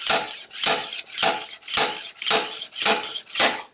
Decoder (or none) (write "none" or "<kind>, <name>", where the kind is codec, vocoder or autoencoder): none